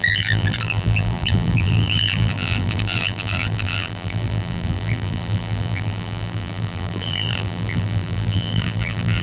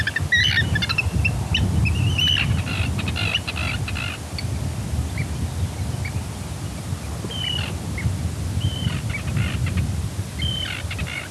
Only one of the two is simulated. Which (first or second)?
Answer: first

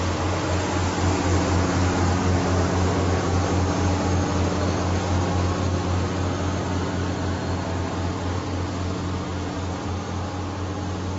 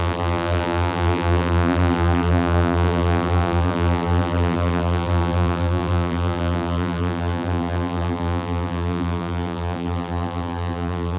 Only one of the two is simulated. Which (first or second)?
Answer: second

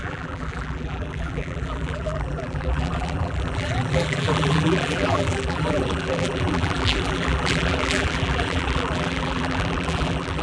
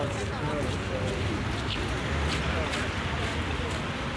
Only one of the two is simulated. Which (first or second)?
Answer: first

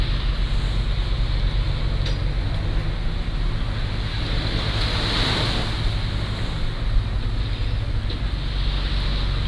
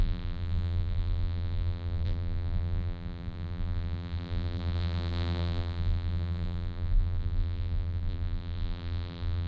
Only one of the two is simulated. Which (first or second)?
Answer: second